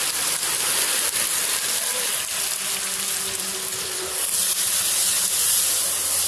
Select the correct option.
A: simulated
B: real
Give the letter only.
B